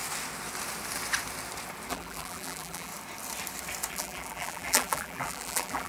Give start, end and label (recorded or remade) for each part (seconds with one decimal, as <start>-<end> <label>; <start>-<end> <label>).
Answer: 0.0-1.9 recorded; 1.9-2.9 remade; 2.9-3.9 recorded; 3.9-5.9 remade